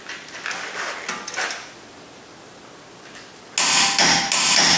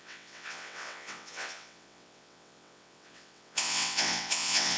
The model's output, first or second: second